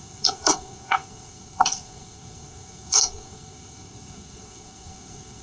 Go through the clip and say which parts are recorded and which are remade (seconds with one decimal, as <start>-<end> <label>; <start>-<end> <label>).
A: 0.0-5.4 remade